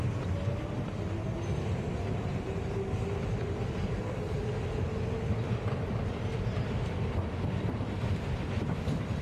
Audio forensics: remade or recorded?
recorded